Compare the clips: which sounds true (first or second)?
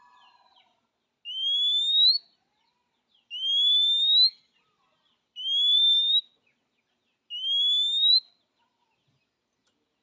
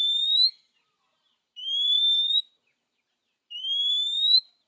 first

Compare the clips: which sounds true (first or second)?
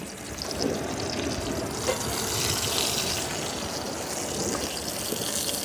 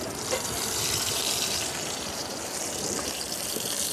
first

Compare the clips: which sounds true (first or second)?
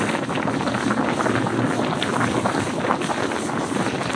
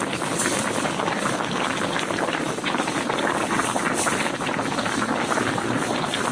first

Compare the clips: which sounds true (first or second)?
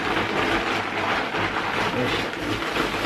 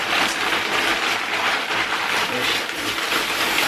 first